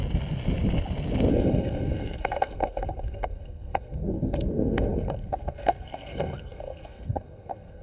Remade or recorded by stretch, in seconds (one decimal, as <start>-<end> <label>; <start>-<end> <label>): 0.0-1.3 recorded; 1.3-7.8 remade